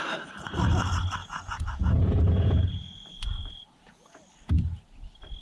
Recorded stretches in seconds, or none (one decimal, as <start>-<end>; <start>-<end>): 0.0-1.2; 4.2-5.4